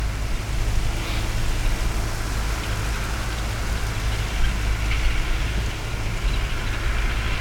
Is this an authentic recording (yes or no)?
yes